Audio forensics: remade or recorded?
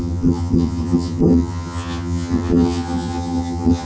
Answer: remade